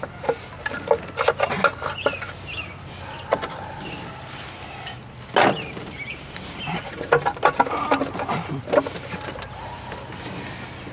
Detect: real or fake real